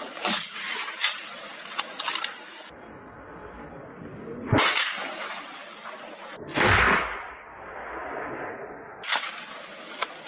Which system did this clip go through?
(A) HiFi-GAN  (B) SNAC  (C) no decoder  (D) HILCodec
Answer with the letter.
C